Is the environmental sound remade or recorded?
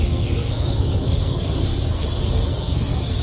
remade